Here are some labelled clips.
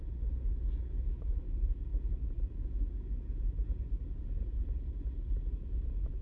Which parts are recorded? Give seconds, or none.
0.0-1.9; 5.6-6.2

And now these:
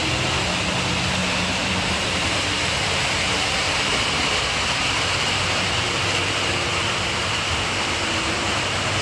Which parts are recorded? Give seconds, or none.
0.0-1.2; 6.4-6.9

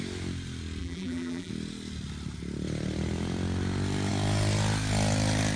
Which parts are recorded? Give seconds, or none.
0.0-0.8; 1.5-5.6